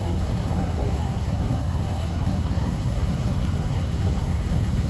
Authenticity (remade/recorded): remade